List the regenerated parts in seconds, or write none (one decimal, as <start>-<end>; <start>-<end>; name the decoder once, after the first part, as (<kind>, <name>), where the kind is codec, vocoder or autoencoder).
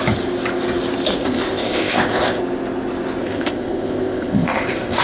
1.2-2.4 (codec, ZipCodec); 3.2-5.0